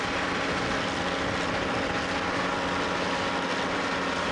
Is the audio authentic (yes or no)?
yes